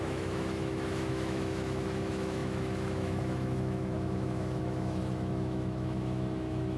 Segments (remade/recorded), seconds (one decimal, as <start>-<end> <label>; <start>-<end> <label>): 0.0-6.8 remade